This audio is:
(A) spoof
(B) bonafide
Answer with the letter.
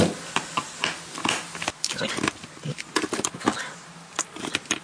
B